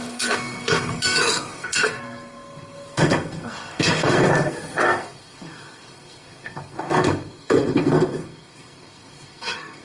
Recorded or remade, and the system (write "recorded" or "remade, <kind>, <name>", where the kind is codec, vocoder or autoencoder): remade, codec, SNAC